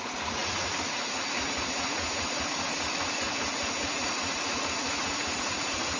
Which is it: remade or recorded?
remade